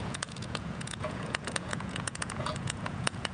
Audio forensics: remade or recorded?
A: remade